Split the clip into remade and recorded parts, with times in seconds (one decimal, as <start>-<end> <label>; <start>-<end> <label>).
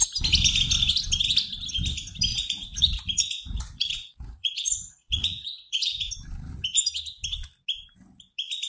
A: 0.0-2.3 recorded; 2.3-6.1 remade; 6.1-8.7 recorded